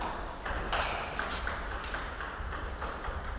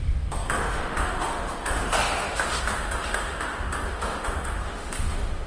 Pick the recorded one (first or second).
first